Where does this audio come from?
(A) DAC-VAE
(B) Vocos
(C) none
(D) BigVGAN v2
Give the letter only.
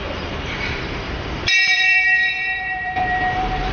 D